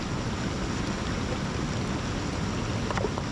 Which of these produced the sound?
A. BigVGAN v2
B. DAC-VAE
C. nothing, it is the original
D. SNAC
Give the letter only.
C